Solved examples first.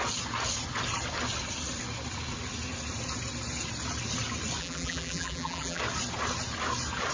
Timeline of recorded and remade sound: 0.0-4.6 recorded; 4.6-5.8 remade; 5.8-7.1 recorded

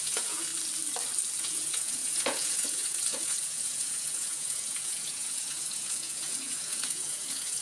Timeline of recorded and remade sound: 0.0-0.5 remade; 0.5-1.4 recorded; 1.4-7.6 remade

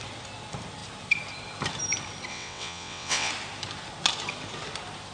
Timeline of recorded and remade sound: 0.0-2.3 recorded; 2.3-3.3 remade; 3.3-5.1 recorded

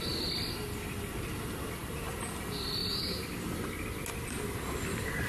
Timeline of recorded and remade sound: 0.0-5.3 recorded

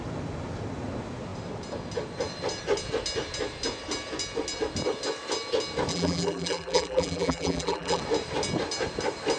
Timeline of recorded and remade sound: 0.0-5.9 recorded; 5.9-8.0 remade; 8.0-9.4 recorded

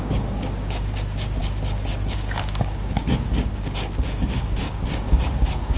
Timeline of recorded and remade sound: 0.0-5.8 remade

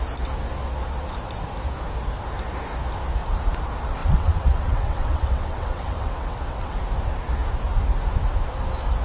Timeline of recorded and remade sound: 0.0-4.0 recorded; 4.0-6.8 remade; 6.8-9.0 recorded

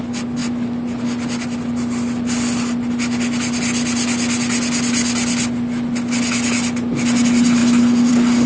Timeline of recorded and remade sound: 0.0-8.5 recorded